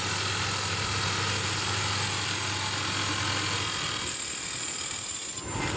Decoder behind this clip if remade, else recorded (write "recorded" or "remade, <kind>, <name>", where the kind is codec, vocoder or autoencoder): recorded